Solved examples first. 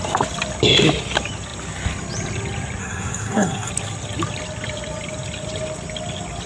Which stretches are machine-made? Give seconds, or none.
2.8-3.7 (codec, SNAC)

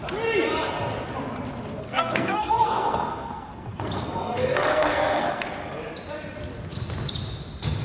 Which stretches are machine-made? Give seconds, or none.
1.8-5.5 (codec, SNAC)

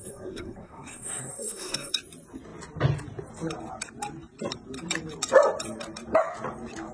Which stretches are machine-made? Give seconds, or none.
0.0-1.9 (codec, SNAC)